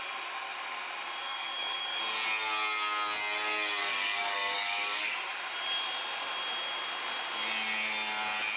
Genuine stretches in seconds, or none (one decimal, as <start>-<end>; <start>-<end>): 0.0-1.2; 2.0-3.8; 5.0-8.6